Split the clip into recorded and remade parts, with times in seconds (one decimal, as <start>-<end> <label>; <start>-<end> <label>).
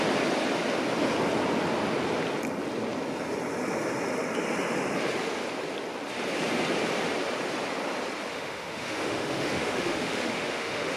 0.0-8.3 recorded; 8.3-11.0 remade